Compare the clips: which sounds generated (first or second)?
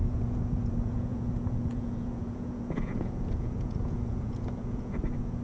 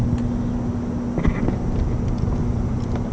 first